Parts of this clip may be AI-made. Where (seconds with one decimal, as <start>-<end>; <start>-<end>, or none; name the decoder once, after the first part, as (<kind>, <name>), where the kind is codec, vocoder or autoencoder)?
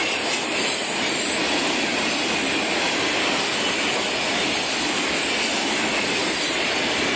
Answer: none